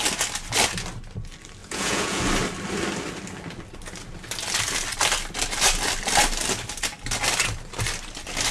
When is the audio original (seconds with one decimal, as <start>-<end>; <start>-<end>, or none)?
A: 0.0-1.6; 2.2-8.5